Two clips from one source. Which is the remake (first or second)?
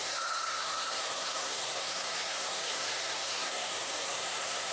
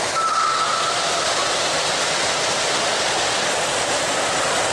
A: first